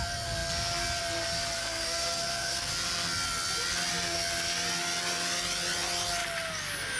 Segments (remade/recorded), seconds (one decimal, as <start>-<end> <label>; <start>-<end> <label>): 0.0-1.6 recorded; 1.6-2.7 remade; 2.7-7.0 recorded